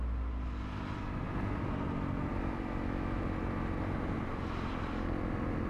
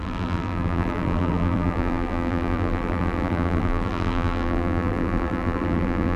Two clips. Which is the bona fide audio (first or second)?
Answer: first